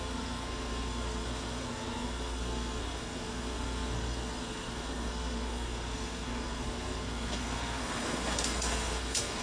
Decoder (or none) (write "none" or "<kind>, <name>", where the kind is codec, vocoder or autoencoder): codec, SNAC